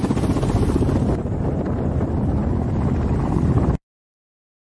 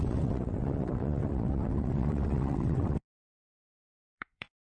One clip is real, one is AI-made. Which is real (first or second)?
first